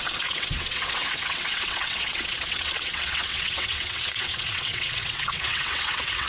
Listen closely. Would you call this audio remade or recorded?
remade